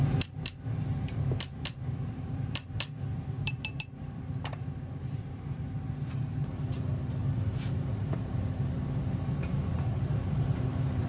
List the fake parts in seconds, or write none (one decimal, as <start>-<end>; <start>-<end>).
0.0-7.2; 7.8-11.1